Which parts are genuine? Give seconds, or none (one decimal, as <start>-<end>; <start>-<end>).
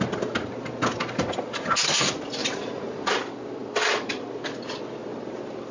0.0-2.4; 3.1-5.7